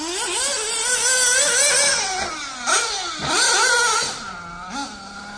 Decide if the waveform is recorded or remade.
recorded